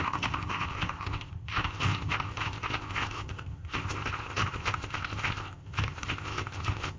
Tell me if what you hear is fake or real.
fake